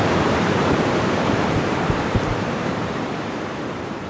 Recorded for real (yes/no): no